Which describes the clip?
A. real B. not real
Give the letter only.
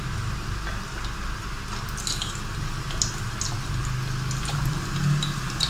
A